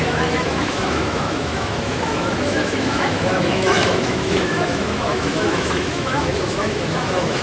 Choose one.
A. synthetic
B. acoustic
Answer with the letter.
A